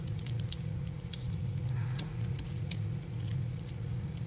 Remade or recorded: remade